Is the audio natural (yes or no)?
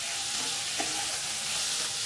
yes